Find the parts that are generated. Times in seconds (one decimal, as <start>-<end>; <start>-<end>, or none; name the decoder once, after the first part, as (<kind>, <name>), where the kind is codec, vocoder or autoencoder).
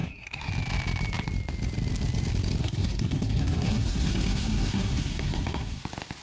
0.0-0.5 (codec, SNAC); 2.6-5.8